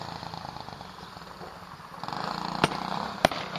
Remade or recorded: recorded